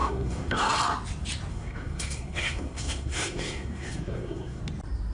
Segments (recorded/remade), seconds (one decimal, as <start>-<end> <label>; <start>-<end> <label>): 0.0-0.7 remade; 0.7-1.5 recorded; 1.5-4.6 remade; 4.6-5.1 recorded